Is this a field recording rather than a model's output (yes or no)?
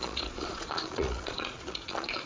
no